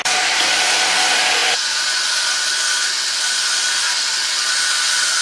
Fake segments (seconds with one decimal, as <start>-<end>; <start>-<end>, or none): 1.4-2.3